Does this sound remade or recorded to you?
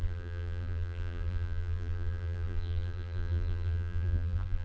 remade